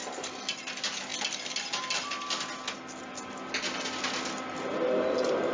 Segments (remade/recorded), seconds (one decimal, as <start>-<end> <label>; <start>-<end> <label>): 0.0-5.5 recorded